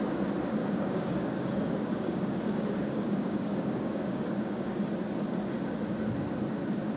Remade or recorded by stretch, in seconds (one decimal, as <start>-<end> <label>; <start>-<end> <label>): 0.0-0.6 recorded; 0.6-4.8 remade; 4.8-7.0 recorded

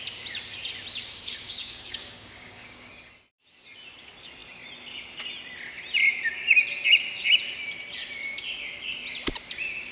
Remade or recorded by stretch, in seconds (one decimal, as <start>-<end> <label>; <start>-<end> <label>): 0.0-1.0 recorded; 1.0-2.9 remade; 2.9-9.9 recorded

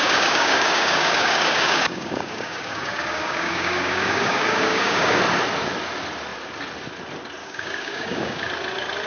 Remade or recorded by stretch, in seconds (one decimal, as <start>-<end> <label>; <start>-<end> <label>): 0.0-5.2 remade; 5.2-7.4 recorded; 7.4-8.5 remade; 8.5-9.1 recorded

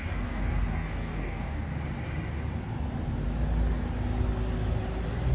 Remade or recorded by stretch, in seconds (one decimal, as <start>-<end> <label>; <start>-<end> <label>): 0.0-1.7 remade; 1.7-5.3 recorded

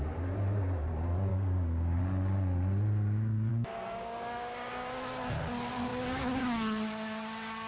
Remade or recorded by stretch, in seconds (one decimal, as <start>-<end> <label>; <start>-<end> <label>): 0.0-1.3 recorded; 1.3-2.0 remade; 2.0-3.5 recorded; 3.5-4.7 remade; 4.7-5.9 recorded; 5.9-6.4 remade; 6.4-7.7 recorded